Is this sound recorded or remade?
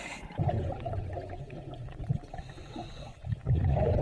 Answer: remade